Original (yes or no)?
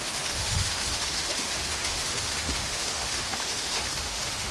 no